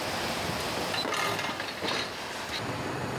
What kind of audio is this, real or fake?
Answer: real